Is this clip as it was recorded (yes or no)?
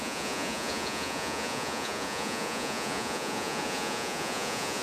no